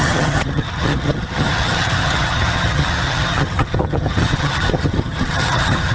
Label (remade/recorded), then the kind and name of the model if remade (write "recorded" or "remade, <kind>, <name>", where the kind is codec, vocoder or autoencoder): remade, vocoder, HiFi-GAN